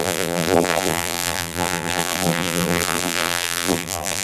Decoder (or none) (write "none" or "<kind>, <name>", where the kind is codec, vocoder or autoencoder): vocoder, BigVGAN v2